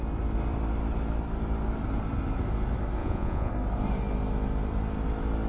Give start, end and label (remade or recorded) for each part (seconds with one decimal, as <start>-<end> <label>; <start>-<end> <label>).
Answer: 0.0-3.0 recorded; 3.0-3.5 remade; 3.5-5.5 recorded